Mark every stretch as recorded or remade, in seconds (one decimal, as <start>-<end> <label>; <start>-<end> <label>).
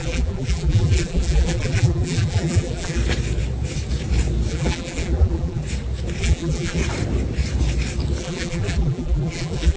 0.0-3.0 remade; 3.0-4.5 recorded; 4.5-5.6 remade; 5.6-6.2 recorded; 6.2-6.8 remade; 6.8-8.2 recorded; 8.2-9.8 remade